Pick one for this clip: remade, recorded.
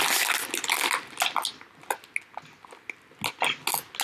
recorded